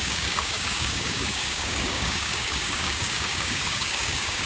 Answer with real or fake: fake